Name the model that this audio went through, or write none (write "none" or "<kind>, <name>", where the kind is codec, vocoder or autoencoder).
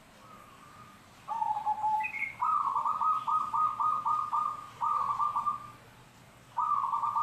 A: none